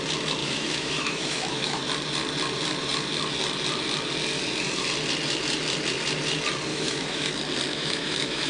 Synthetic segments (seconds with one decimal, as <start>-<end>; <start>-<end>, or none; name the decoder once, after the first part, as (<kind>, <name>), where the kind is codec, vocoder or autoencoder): 0.4-1.8 (autoencoder, DAC-VAE); 6.7-7.3; 7.7-8.5